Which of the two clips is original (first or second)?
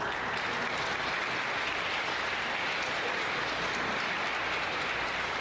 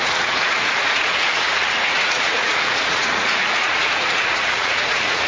first